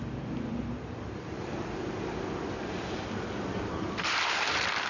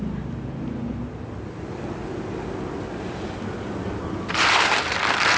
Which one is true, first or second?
second